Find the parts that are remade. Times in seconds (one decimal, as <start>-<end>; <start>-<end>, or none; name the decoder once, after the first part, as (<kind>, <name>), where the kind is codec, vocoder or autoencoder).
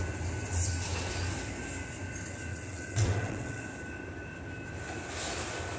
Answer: 2.5-3.6 (vocoder, WaveNeXt)